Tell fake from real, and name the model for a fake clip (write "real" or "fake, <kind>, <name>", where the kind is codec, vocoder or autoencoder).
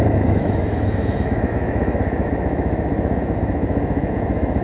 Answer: fake, autoencoder, DAC-VAE